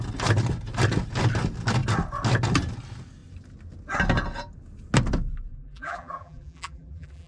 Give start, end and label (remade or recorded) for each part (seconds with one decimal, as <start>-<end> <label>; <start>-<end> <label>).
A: 0.0-5.5 recorded; 5.5-7.3 remade